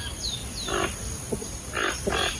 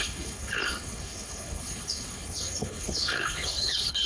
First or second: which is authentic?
first